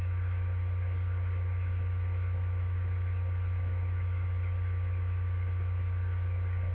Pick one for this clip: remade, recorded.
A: recorded